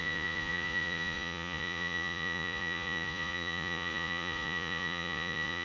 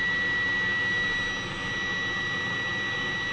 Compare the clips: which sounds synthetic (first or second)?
first